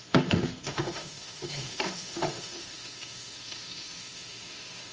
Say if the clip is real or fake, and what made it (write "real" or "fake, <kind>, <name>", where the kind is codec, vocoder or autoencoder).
fake, autoencoder, DAC-VAE